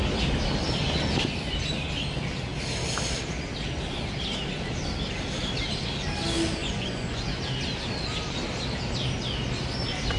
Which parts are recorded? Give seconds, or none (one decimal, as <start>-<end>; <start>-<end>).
0.0-6.6; 7.4-10.2